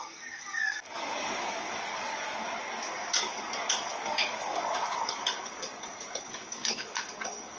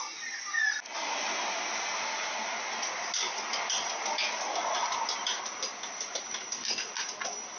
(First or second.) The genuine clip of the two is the second